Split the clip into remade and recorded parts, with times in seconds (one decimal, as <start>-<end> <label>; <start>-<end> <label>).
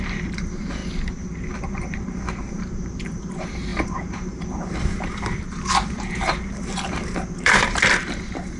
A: 0.0-0.8 remade; 0.8-1.6 recorded; 1.6-8.6 remade